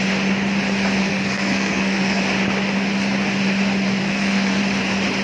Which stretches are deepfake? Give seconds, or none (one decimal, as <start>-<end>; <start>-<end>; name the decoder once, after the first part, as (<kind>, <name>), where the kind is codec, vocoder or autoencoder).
1.0-2.2 (codec, SNAC); 4.0-4.6